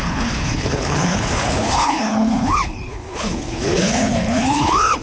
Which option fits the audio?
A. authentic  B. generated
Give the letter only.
B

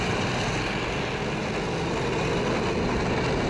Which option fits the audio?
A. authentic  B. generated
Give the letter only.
A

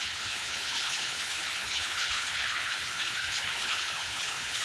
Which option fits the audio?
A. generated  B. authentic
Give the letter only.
A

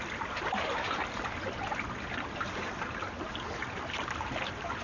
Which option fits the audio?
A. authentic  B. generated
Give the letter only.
A